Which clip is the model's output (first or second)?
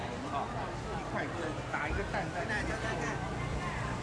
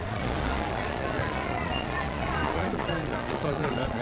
second